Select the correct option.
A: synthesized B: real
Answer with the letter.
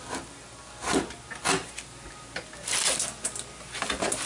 B